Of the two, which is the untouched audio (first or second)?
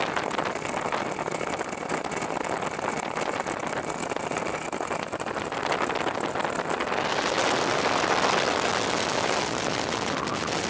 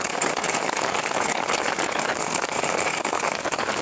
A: first